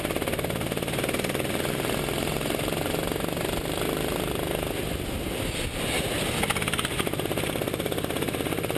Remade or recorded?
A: recorded